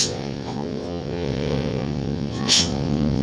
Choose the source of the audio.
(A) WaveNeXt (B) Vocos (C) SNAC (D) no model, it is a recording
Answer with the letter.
A